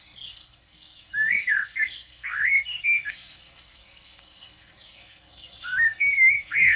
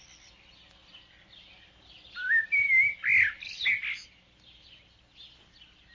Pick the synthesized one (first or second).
first